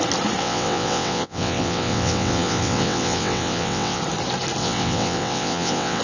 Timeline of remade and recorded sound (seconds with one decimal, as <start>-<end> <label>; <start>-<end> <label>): 0.0-0.4 recorded; 0.4-4.0 remade; 4.0-4.6 recorded; 4.6-6.0 remade